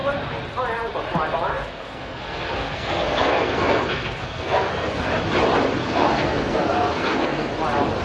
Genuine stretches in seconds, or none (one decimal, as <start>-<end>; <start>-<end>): 0.0-1.5; 5.1-5.8; 7.5-8.0